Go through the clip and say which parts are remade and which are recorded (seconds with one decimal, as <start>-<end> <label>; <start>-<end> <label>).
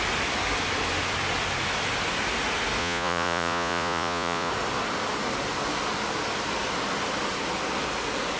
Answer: 0.0-2.8 recorded; 2.8-4.5 remade; 4.5-8.4 recorded